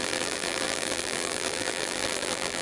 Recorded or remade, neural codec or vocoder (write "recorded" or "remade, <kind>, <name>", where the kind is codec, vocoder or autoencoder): remade, vocoder, BigVGAN v2